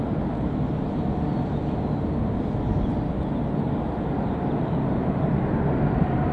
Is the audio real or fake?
real